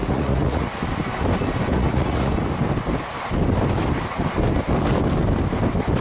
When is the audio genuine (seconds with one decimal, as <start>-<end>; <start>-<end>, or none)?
0.7-1.7; 2.3-6.0